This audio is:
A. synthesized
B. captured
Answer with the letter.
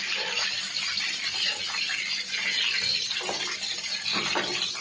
B